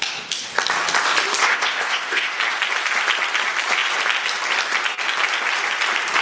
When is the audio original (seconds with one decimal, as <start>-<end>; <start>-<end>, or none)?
0.0-1.4; 2.3-6.2